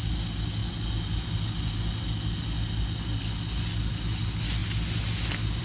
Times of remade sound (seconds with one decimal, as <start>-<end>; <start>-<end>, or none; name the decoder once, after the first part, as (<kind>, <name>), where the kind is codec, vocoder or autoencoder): none